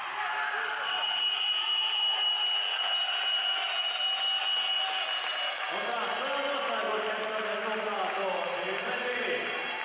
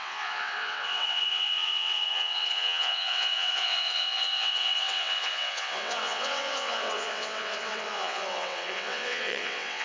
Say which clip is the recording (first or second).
first